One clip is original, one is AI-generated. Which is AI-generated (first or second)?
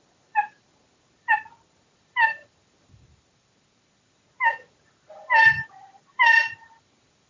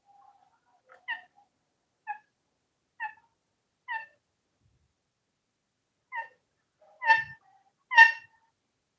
first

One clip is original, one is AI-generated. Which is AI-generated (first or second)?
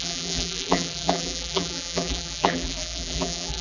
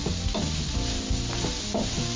first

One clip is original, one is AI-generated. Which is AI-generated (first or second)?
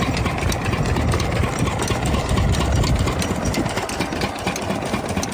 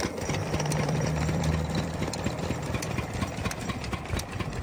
second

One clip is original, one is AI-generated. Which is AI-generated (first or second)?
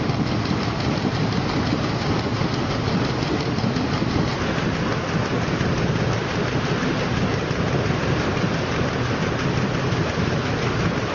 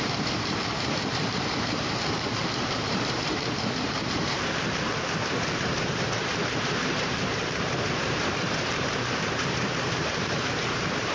second